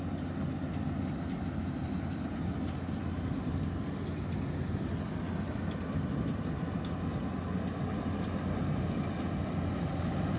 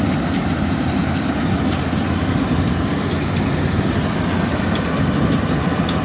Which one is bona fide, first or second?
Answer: first